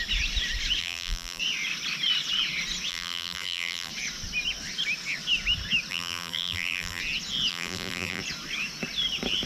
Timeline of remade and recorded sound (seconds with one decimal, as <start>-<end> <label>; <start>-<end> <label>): 0.0-0.8 recorded; 0.8-1.4 remade; 1.4-2.9 recorded; 2.9-3.9 remade; 3.9-5.9 recorded; 5.9-7.0 remade; 7.0-7.5 recorded; 7.5-8.2 remade; 8.2-9.5 recorded